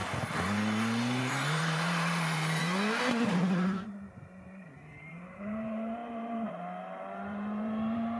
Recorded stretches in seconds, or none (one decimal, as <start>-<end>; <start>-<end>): 0.0-1.2; 2.6-3.3